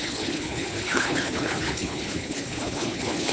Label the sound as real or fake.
fake